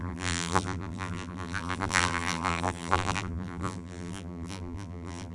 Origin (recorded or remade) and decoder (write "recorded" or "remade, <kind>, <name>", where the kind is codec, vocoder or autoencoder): remade, vocoder, BigVGAN v2